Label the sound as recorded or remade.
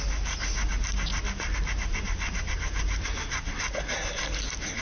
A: recorded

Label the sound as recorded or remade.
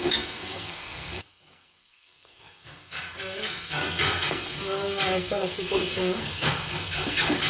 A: remade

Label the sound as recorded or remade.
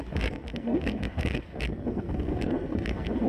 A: remade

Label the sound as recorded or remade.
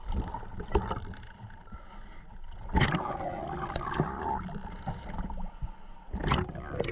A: recorded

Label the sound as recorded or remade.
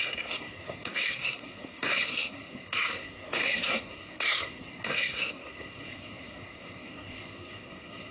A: remade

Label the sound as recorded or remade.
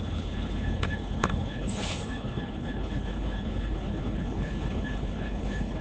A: remade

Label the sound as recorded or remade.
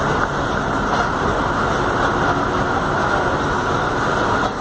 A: recorded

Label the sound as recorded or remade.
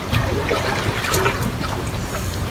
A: remade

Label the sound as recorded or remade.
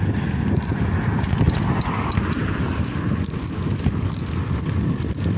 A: recorded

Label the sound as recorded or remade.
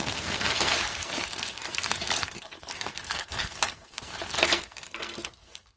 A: remade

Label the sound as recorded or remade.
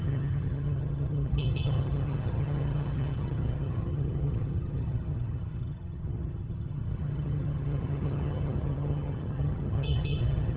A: remade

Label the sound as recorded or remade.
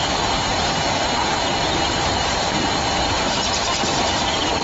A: remade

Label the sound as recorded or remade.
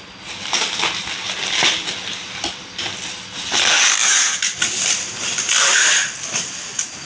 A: recorded